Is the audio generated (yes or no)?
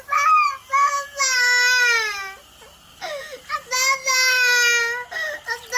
no